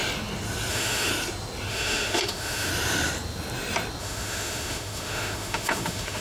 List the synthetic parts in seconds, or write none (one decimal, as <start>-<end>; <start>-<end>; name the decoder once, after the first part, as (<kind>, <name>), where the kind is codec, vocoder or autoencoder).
0.7-1.1 (autoencoder, DAC-VAE); 1.7-2.7; 4.0-6.2